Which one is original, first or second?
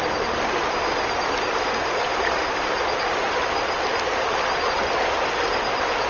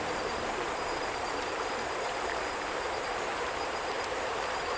first